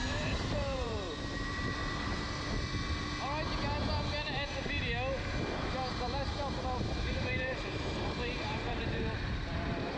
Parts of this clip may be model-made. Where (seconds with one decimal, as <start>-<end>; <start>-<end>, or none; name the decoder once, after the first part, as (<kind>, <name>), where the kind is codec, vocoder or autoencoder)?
0.0-1.8 (vocoder, BigVGAN v2); 5.7-10.0